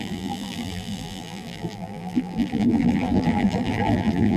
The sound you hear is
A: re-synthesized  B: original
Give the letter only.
A